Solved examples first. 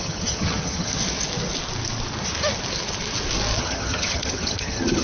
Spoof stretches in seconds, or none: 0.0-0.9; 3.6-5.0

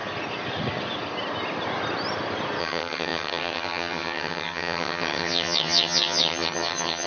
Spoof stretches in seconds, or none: 2.6-7.1

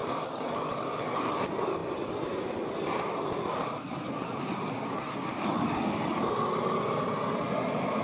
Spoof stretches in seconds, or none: none

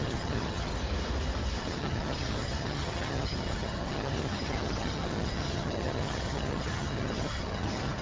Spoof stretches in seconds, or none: 0.0-0.7; 1.6-8.0

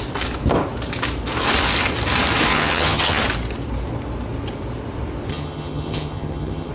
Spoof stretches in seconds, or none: 2.5-3.2; 5.3-6.7